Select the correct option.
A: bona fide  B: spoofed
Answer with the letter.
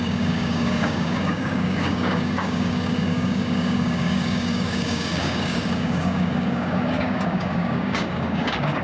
B